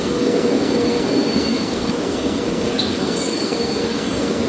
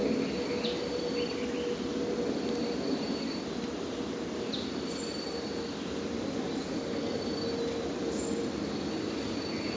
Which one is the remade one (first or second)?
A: first